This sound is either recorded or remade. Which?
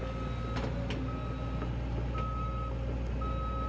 recorded